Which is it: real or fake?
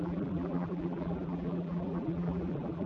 fake